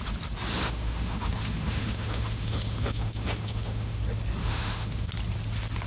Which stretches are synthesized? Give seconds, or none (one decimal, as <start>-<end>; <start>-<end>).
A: 0.5-4.0; 4.4-5.1